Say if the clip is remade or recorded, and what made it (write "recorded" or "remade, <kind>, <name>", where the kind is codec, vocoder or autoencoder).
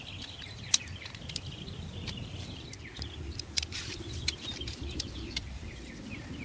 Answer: recorded